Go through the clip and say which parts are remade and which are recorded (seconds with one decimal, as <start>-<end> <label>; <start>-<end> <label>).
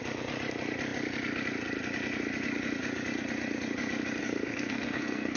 0.0-4.2 recorded; 4.2-5.4 remade